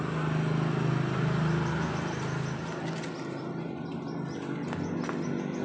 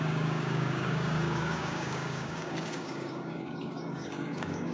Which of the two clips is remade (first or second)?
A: second